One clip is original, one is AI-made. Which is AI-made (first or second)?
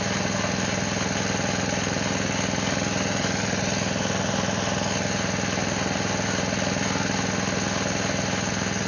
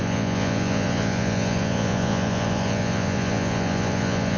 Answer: second